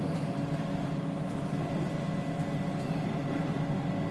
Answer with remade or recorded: recorded